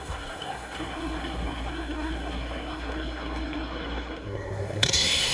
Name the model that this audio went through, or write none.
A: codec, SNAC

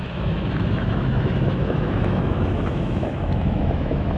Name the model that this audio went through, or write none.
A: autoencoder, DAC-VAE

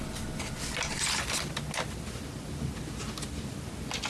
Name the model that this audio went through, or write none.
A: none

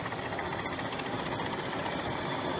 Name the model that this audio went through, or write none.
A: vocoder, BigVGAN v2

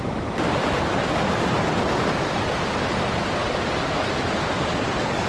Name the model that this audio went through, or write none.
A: vocoder, BigVGAN v2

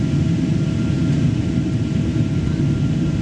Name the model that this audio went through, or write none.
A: none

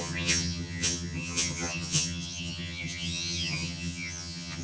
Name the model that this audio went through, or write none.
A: vocoder, HiFi-GAN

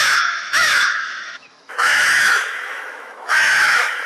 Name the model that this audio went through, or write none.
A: autoencoder, DAC-VAE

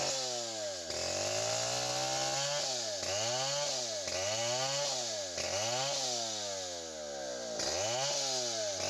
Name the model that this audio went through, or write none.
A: none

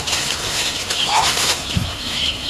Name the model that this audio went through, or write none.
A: codec, SNAC